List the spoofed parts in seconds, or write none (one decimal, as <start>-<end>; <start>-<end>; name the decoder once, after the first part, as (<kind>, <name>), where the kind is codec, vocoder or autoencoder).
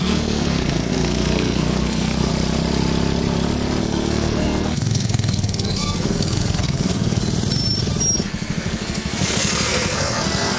0.0-2.3 (codec, SNAC); 3.8-7.2; 8.2-10.6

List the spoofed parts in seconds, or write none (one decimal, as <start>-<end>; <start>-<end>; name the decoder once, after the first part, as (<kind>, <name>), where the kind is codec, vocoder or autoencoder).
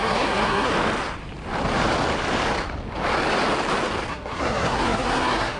0.0-0.7 (codec, SNAC); 4.1-5.6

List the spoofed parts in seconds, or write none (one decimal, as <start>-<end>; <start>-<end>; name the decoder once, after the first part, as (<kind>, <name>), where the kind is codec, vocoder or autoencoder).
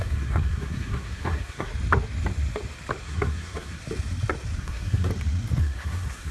0.0-1.7 (codec, SNAC); 3.0-3.8; 4.6-5.1; 5.6-6.3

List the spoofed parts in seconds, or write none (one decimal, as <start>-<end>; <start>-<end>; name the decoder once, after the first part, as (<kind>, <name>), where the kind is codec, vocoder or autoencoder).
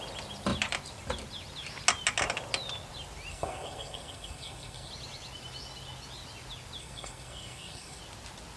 3.3-4.9 (codec, SNAC); 6.8-8.0